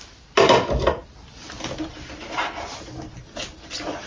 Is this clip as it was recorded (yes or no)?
yes